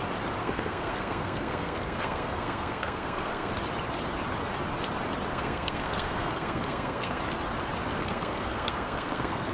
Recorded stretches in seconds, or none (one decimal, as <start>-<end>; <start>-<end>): 0.0-0.4; 3.5-5.3; 7.2-8.0